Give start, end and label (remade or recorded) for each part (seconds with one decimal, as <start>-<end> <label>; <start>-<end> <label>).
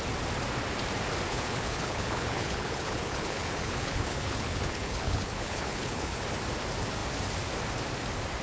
0.0-1.3 recorded; 1.3-6.2 remade; 6.2-8.4 recorded